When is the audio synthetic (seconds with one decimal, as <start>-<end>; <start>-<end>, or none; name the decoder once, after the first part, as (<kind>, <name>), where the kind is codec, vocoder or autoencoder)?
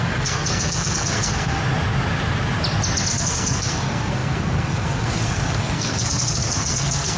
0.0-1.6 (codec, SNAC); 3.1-7.2